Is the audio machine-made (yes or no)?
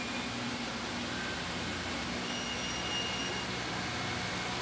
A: no